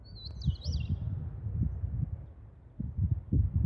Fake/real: real